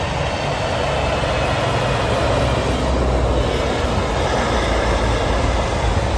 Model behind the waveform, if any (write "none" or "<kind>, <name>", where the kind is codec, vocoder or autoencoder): none